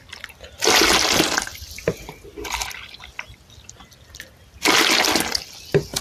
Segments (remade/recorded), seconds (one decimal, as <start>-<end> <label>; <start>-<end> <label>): 0.0-6.0 recorded